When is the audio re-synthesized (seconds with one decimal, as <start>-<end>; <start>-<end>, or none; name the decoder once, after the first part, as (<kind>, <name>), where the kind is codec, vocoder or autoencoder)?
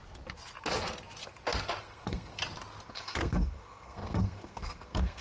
1.8-2.4 (codec, SNAC); 2.9-5.2